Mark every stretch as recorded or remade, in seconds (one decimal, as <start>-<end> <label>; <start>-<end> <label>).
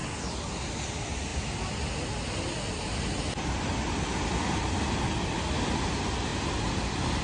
0.0-7.2 recorded